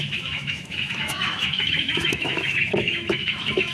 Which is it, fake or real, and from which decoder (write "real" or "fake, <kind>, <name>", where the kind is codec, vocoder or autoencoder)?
fake, autoencoder, DAC-VAE